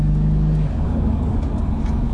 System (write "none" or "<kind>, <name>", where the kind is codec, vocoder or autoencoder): codec, DAC